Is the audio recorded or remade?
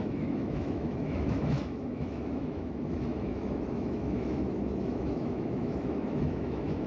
remade